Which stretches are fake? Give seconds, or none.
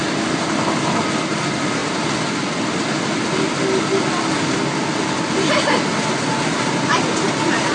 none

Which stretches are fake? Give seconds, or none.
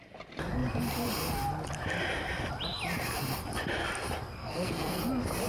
4.4-5.0 (codec, SNAC)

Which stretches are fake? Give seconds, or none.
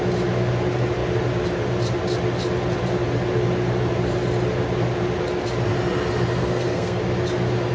6.4-7.0 (codec, SNAC)